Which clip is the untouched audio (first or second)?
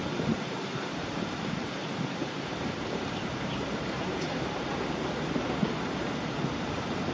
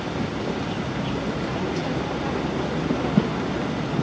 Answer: second